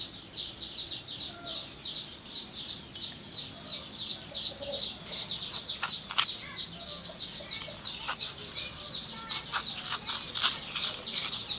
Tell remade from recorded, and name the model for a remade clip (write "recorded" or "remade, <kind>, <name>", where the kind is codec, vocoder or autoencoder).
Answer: recorded